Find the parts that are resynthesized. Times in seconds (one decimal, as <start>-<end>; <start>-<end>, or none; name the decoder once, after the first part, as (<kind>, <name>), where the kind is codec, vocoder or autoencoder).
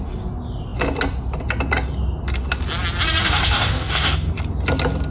3.2-4.3 (codec, DAC)